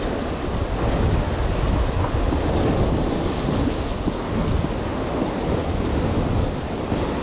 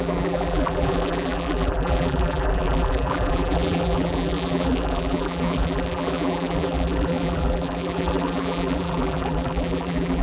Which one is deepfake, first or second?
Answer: second